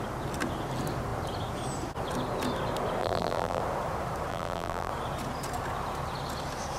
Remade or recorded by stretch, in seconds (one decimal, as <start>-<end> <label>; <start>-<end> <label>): 0.0-3.0 recorded; 3.0-3.6 remade; 3.6-4.3 recorded; 4.3-4.9 remade; 4.9-6.8 recorded